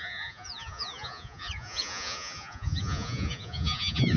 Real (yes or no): no